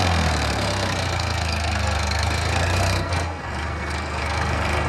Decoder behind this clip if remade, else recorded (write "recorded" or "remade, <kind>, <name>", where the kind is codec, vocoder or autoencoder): remade, codec, SNAC